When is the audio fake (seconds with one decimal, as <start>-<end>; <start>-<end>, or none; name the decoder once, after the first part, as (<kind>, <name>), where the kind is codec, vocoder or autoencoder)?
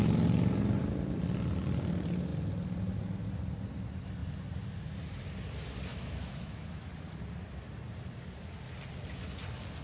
5.9-6.9 (autoencoder, DAC-VAE)